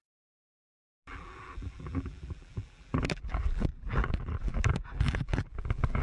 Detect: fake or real fake